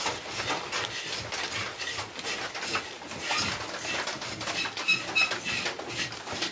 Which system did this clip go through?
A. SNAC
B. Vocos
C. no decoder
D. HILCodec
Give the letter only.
C